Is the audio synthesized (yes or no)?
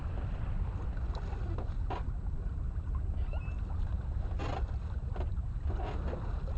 no